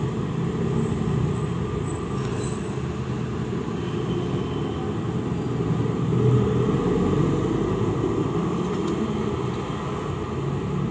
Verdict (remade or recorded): recorded